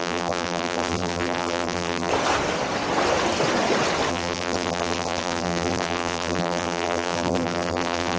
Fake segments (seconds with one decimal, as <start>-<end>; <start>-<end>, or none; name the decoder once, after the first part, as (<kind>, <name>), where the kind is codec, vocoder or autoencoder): 0.0-2.1 (vocoder, BigVGAN v2); 4.1-8.2